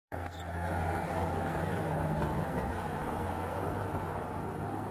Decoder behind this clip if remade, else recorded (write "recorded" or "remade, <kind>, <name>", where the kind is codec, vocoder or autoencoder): remade, codec, SNAC